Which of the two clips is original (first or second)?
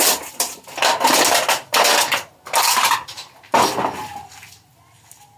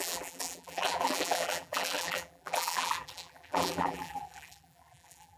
first